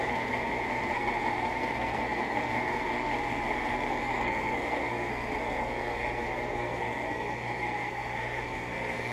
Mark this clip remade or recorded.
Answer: remade